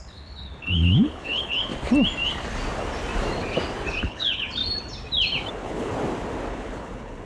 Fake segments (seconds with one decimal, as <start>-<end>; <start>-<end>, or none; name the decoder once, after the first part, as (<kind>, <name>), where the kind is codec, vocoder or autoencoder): 0.0-1.7 (codec, HILCodec); 4.0-4.6; 5.5-5.9; 6.5-7.3

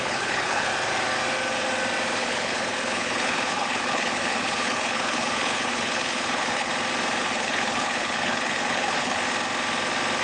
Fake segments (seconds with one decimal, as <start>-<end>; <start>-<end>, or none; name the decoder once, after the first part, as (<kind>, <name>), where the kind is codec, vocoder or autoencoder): 0.0-0.7 (codec, HILCodec); 2.2-6.7; 7.2-9.2

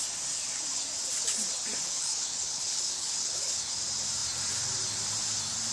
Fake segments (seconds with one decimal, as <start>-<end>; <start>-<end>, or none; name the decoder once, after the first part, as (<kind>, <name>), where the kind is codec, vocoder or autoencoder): 1.8-3.8 (codec, HILCodec)

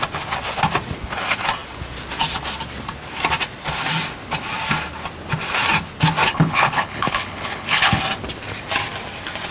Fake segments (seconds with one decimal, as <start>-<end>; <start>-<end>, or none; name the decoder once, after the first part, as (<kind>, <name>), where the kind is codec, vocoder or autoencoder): 6.3-8.0 (codec, HILCodec)